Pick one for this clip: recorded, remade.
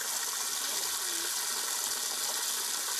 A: recorded